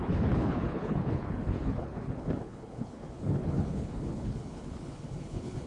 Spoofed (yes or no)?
yes